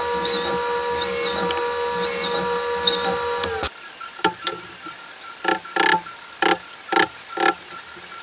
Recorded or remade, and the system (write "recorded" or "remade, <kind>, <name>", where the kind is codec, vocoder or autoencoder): recorded